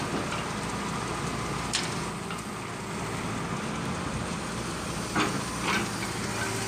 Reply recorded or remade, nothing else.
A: recorded